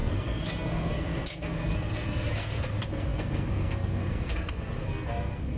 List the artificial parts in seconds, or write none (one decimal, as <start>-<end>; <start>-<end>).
0.0-5.6